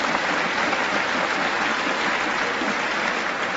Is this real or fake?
real